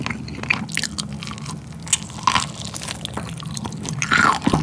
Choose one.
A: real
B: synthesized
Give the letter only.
A